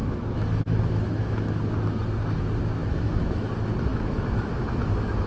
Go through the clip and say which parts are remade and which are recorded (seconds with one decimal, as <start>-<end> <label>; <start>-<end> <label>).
0.0-1.6 remade; 1.6-2.8 recorded; 2.8-3.5 remade; 3.5-3.9 recorded; 3.9-5.3 remade